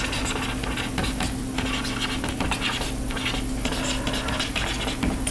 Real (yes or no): yes